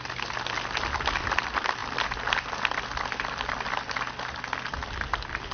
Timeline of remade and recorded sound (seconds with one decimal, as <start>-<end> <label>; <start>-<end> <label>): 0.0-5.5 recorded